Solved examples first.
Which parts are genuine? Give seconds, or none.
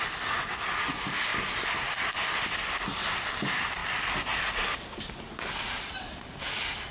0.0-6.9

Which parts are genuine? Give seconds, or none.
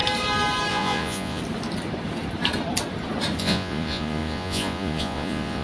0.0-0.7; 1.4-3.4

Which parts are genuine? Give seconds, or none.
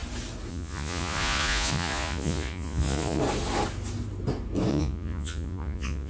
0.0-0.5; 3.2-4.7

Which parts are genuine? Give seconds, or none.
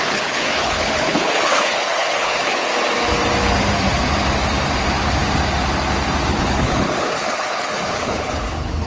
2.7-6.3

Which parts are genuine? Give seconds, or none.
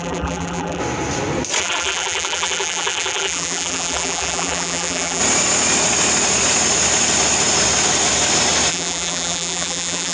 0.8-1.6; 5.2-8.7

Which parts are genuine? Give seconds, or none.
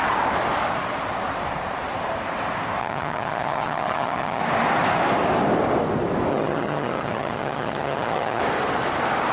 0.0-2.8; 4.4-6.3; 8.4-9.3